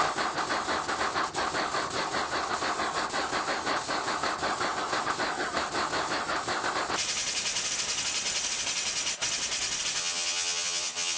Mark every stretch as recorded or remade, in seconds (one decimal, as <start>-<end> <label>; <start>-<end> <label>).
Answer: 0.0-10.0 recorded; 10.0-11.2 remade